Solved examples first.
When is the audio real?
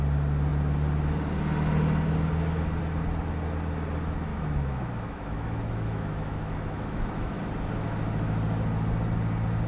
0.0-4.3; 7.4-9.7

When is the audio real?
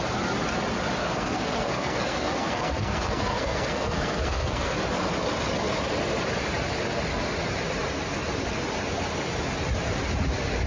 0.0-1.0; 4.8-10.7